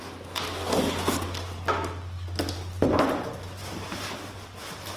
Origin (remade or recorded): recorded